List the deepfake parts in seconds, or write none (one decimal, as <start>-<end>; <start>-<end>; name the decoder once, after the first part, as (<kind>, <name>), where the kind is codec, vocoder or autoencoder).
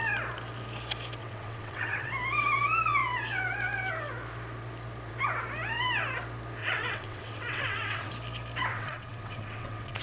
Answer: 1.2-2.1 (vocoder, WaveNeXt); 6.6-8.1; 8.7-10.0